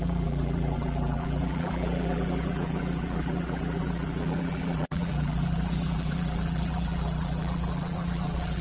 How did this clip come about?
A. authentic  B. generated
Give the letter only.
B